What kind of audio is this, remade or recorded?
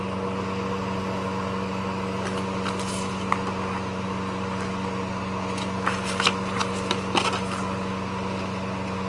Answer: recorded